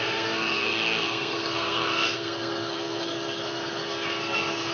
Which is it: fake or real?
fake